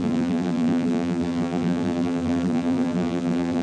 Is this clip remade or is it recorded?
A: remade